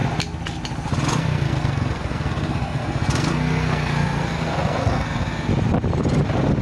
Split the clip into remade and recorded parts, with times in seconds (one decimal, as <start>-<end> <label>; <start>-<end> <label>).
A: 0.0-1.1 recorded; 1.1-5.5 remade; 5.5-6.6 recorded